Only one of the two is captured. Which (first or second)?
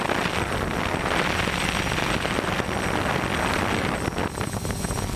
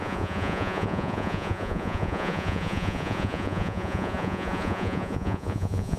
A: first